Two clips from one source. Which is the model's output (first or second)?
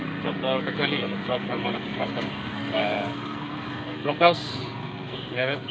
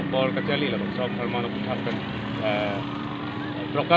first